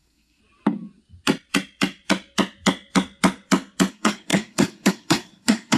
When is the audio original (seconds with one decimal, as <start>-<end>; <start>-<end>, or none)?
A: 0.4-3.9